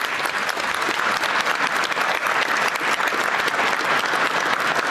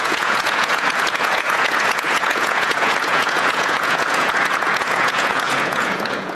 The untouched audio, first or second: first